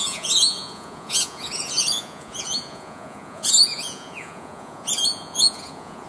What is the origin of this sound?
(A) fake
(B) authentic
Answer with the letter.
A